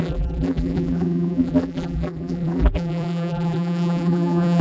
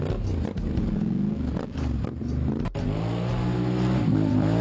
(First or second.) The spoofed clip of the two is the first